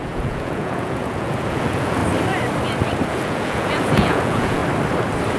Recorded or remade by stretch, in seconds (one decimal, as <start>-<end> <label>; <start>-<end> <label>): 0.0-2.0 remade; 2.0-3.1 recorded; 3.1-4.6 remade; 4.6-5.4 recorded